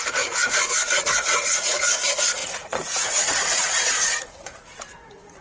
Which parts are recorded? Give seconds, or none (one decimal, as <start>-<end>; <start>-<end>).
none